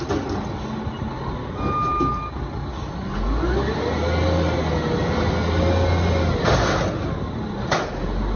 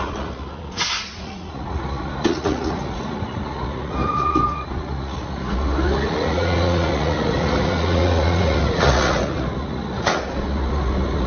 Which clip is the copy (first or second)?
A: second